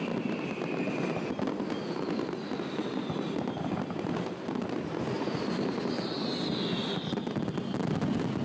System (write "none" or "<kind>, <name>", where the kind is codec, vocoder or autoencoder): none